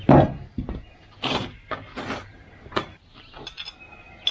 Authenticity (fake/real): real